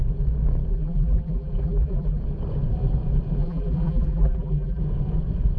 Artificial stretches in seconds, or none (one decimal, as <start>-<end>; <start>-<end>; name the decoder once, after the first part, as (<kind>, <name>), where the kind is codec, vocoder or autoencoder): 0.7-2.2 (vocoder, BigVGAN v2); 3.4-4.8